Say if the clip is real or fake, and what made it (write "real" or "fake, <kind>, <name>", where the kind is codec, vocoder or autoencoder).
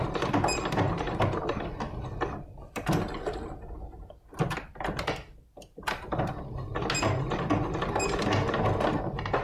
real